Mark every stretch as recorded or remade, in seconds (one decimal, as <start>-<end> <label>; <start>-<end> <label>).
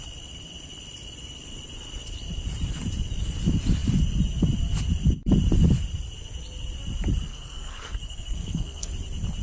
0.0-7.3 recorded; 7.3-8.9 remade; 8.9-9.4 recorded